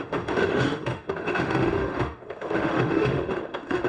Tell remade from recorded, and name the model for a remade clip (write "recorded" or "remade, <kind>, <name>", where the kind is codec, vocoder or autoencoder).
remade, autoencoder, DAC-VAE